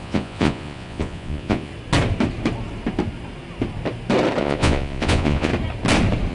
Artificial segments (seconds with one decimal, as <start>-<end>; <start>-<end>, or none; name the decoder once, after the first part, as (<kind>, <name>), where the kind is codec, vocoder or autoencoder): 0.0-1.7 (vocoder, Vocos); 4.4-5.5